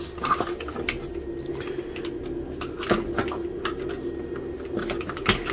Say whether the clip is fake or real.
real